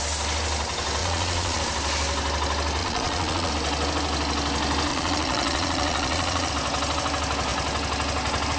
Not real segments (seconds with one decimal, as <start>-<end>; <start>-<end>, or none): 1.0-1.6; 2.8-3.5; 4.9-6.5